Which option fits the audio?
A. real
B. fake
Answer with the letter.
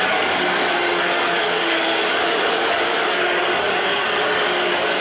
B